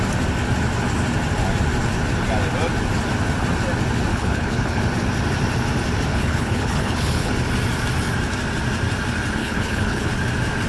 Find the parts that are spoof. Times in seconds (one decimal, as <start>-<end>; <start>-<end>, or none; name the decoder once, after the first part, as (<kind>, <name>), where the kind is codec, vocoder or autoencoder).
4.1-4.8 (codec, HILCodec); 6.1-7.3; 9.4-10.1